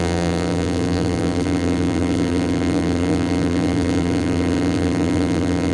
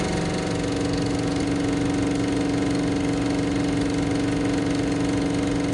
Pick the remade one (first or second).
first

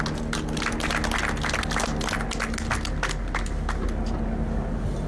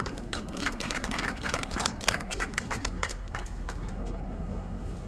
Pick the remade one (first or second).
second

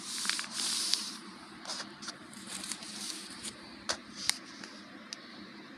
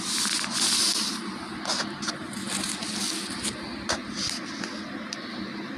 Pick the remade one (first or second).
first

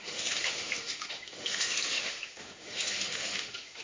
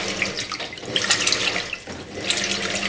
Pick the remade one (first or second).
first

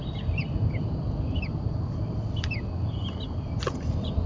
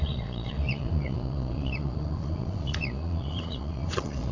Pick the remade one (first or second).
second